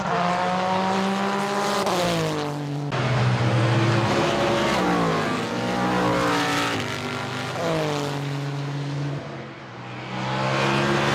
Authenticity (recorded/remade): recorded